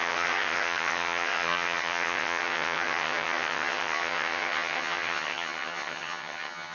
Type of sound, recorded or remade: remade